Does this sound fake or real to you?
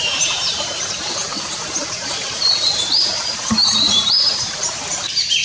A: fake